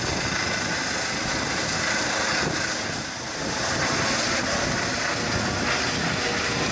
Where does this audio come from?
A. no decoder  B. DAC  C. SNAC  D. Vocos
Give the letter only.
A